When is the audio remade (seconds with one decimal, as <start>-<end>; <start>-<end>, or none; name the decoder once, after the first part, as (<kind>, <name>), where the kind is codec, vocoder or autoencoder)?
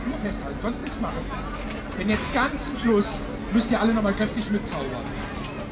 none